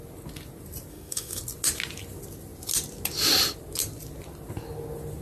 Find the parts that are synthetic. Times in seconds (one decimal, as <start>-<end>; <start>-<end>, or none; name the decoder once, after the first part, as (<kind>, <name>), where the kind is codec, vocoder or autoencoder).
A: 0.9-1.4 (autoencoder, DAC-VAE)